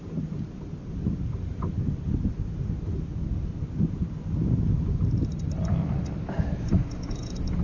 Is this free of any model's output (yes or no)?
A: yes